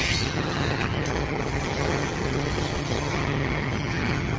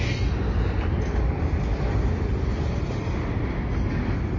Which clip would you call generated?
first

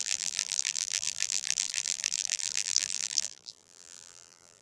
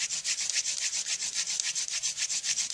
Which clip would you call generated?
first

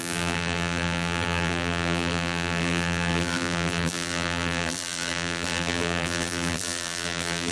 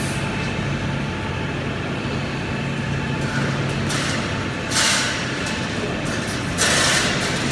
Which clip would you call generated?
first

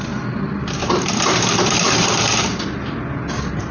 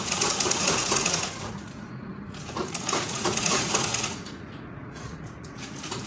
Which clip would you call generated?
second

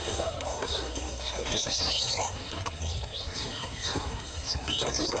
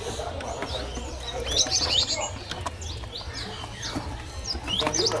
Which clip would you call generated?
first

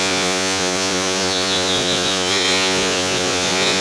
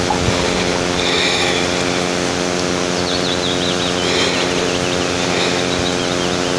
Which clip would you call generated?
first